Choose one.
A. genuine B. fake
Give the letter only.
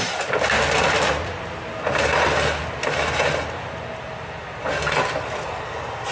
A